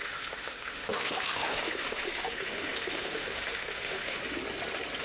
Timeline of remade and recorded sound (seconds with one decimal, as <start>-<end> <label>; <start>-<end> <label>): 0.0-4.2 remade; 4.2-5.0 recorded